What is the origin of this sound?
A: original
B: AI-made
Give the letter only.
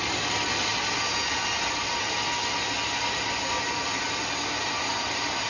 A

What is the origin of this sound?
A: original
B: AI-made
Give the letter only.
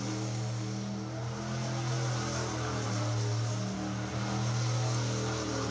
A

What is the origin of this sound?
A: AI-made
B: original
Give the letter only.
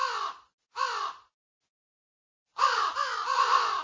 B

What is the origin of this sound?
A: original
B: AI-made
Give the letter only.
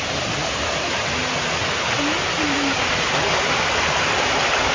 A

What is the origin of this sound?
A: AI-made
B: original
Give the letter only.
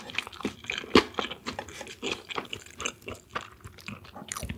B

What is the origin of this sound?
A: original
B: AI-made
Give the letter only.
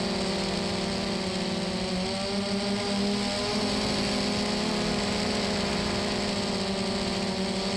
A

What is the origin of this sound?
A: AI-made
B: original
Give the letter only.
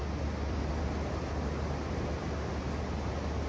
B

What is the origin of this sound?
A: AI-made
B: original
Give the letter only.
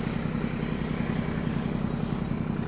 B